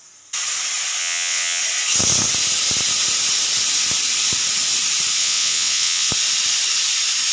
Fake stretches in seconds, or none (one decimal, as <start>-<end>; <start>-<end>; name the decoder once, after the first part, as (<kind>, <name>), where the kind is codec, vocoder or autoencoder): 1.0-1.6 (vocoder, WaveNeXt); 5.2-6.1